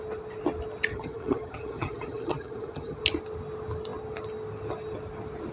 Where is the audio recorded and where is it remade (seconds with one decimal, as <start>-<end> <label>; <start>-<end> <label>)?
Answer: 0.0-0.9 recorded; 0.9-3.0 remade; 3.0-5.5 recorded